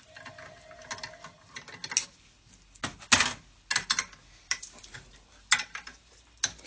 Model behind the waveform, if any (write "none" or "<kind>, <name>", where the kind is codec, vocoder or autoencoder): none